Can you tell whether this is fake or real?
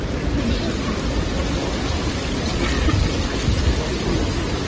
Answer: real